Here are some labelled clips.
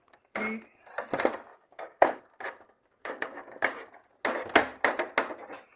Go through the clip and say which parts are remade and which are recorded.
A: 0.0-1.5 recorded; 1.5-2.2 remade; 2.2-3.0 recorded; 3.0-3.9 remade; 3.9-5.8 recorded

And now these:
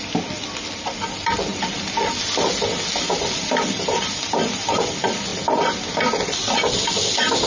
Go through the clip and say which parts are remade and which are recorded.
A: 0.0-7.5 recorded